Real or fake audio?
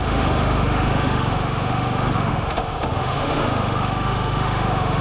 fake